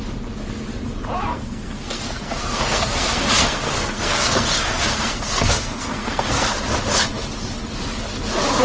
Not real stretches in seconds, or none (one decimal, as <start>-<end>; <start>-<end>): 1.3-6.5